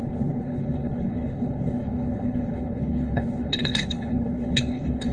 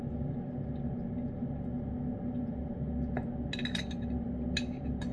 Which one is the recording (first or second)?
second